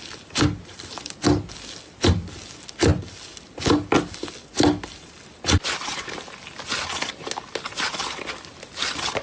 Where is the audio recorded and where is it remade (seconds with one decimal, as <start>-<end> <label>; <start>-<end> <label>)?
0.0-9.2 recorded